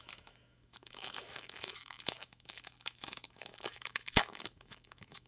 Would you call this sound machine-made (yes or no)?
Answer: yes